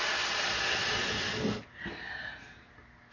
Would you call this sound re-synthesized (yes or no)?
no